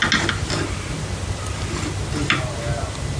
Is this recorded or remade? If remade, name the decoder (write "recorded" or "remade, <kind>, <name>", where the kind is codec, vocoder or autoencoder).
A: recorded